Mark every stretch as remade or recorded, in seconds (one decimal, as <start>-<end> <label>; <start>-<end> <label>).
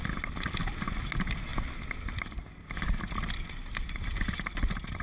0.0-5.0 remade